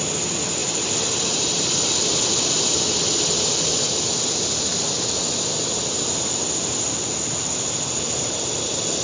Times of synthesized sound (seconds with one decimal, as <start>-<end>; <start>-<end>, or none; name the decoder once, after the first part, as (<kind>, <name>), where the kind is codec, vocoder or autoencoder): none

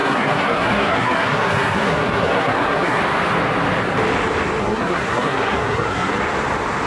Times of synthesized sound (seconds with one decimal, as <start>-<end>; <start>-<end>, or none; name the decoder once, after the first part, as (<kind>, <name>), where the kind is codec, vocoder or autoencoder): 0.0-3.0 (codec, SNAC); 4.6-6.2

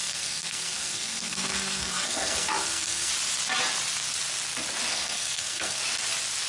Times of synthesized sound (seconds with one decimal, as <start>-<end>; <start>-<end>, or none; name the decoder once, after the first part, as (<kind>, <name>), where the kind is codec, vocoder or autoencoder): 0.0-3.1 (codec, SNAC); 4.9-5.8

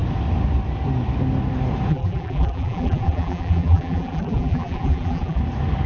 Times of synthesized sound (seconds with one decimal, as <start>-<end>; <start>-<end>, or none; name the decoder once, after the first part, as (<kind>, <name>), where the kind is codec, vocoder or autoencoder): 1.9-5.4 (vocoder, BigVGAN v2)

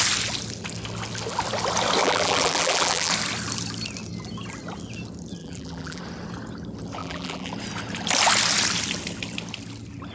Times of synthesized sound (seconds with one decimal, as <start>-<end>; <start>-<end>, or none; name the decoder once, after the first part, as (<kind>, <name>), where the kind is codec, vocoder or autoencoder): 2.0-3.1 (vocoder, BigVGAN v2); 5.4-6.0; 7.0-7.5